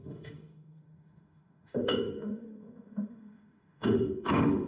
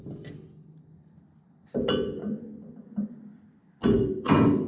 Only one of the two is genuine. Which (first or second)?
second